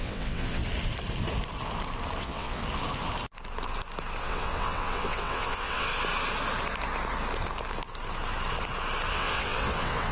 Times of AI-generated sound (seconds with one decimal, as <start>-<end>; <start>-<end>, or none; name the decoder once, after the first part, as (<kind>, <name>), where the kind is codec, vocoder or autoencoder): 0.0-0.6 (vocoder, WaveNeXt); 2.2-2.6; 4.2-5.9; 9.1-10.1